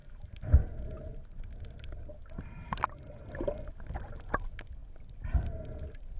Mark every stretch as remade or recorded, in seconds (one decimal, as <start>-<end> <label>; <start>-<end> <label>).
0.0-6.2 recorded